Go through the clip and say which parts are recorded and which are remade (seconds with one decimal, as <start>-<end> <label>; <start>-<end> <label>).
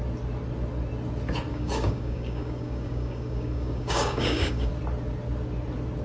0.0-1.5 recorded; 1.5-4.7 remade; 4.7-6.0 recorded